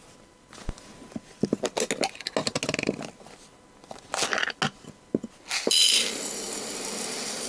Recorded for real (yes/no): yes